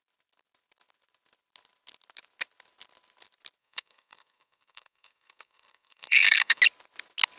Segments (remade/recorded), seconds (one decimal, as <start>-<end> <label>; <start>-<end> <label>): 0.0-3.6 recorded; 3.6-6.6 remade; 6.6-7.4 recorded